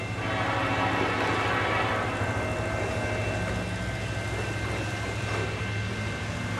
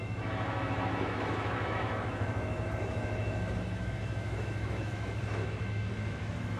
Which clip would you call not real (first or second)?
second